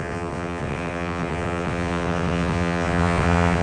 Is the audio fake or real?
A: fake